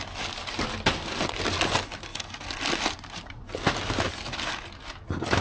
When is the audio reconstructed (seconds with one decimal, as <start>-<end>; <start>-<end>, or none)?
none